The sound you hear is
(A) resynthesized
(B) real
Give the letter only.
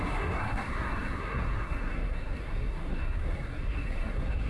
A